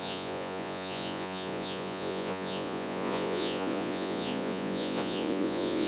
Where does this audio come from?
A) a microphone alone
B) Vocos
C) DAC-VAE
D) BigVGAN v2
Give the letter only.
B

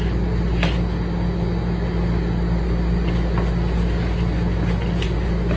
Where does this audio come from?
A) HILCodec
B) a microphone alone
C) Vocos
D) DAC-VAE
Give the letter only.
B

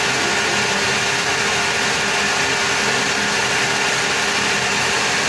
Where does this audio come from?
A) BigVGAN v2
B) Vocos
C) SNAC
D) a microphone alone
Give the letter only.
D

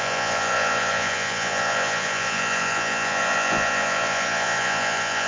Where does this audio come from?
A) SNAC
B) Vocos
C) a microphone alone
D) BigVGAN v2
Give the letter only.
B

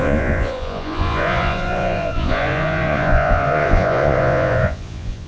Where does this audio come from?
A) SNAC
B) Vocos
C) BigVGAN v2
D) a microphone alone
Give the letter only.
B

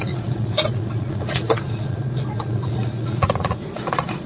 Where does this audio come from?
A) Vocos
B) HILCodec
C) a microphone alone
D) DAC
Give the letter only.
A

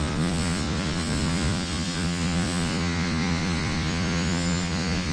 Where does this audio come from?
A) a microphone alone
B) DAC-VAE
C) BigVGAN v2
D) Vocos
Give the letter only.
D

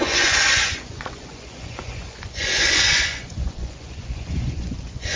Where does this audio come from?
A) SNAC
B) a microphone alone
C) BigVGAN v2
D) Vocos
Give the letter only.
D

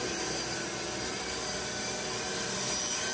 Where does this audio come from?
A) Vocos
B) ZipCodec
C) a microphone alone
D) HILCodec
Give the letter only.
C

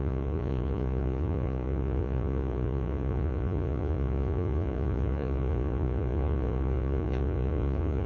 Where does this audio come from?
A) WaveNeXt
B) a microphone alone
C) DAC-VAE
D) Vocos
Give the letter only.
D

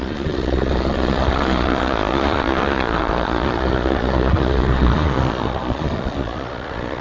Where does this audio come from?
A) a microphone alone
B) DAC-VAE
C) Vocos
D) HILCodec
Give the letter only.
C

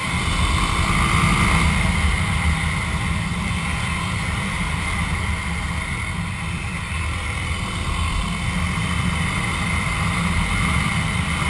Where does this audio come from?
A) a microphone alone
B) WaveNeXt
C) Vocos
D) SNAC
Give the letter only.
A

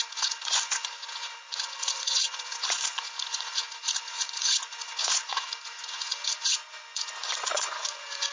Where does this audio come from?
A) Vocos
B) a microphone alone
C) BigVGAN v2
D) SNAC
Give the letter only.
A